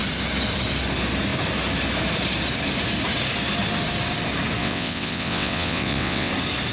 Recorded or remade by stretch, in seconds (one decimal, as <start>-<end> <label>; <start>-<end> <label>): 0.0-4.6 recorded; 4.6-6.3 remade; 6.3-6.7 recorded